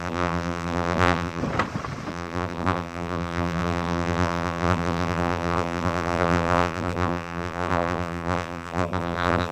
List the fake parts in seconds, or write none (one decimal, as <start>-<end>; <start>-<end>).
0.0-1.4; 2.1-9.5